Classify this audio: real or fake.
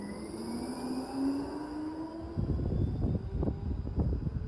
real